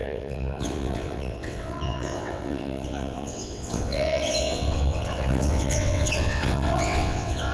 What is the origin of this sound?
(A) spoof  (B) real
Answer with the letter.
A